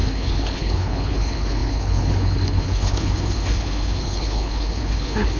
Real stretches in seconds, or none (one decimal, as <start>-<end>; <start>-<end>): none